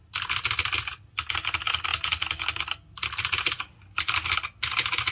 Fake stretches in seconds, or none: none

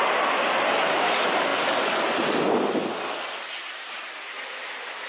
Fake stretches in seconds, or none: none

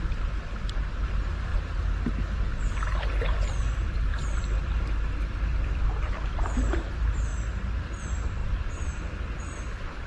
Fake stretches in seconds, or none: 0.0-1.5 (vocoder, BigVGAN v2); 2.4-7.3; 8.0-8.4

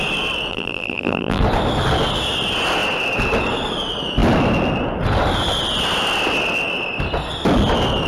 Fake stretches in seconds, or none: 0.5-1.4 (vocoder, BigVGAN v2)

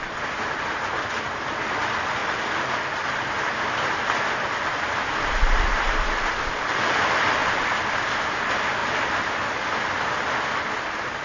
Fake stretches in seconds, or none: 0.0-2.2 (vocoder, BigVGAN v2); 4.7-11.2

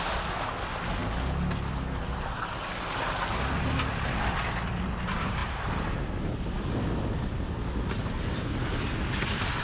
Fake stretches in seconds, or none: 5.4-6.1 (vocoder, BigVGAN v2)